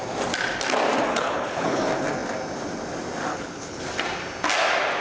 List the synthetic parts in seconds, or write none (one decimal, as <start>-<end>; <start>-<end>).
1.1-1.8; 3.3-3.8